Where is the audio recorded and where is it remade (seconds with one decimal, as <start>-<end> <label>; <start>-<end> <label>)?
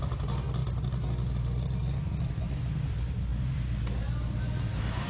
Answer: 0.0-5.1 recorded